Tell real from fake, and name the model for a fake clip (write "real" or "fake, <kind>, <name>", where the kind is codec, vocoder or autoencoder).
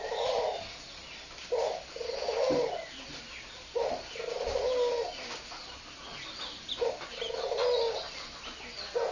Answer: real